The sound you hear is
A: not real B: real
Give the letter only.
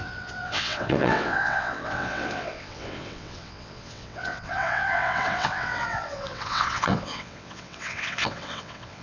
A